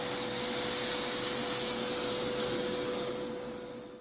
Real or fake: real